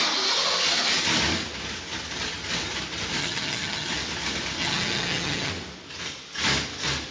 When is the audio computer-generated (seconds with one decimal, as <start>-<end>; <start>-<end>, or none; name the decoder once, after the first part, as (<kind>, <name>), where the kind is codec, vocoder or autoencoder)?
3.2-3.9 (vocoder, HiFi-GAN); 4.6-5.5